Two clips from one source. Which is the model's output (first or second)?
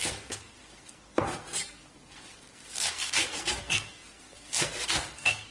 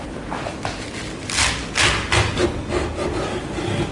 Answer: first